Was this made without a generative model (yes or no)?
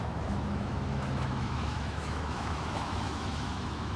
no